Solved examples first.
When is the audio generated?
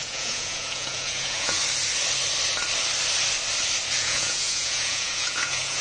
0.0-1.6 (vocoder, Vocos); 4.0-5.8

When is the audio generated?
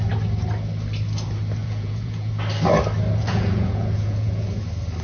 1.6-2.3 (vocoder, Vocos); 3.2-4.5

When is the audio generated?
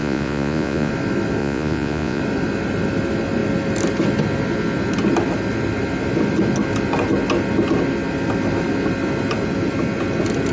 0.0-0.9 (vocoder, Vocos); 1.4-2.2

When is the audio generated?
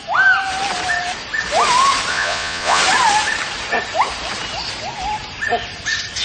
2.1-2.8 (vocoder, Vocos)